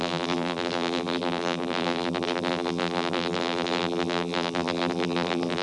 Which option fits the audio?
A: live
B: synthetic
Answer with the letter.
B